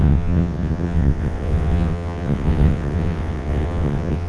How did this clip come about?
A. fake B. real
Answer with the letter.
A